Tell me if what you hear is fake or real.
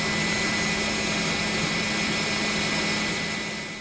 real